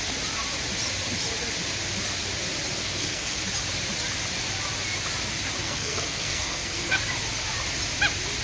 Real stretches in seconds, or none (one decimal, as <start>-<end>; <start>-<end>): 0.0-2.8; 3.4-5.6; 7.0-8.4